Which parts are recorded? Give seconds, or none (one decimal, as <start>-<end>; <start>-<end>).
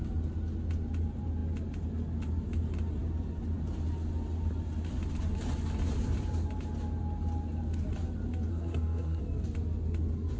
0.0-8.5; 9.2-10.4